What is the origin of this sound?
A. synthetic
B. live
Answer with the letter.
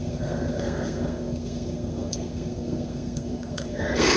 A